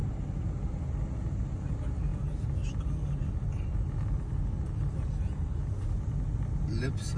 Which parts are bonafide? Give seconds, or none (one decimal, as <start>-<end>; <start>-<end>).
0.0-7.2